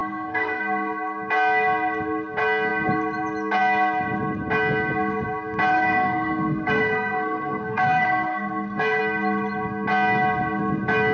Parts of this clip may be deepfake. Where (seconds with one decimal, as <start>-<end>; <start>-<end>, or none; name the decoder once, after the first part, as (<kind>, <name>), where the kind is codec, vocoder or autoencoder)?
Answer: 0.0-0.6 (codec, SNAC); 5.7-9.0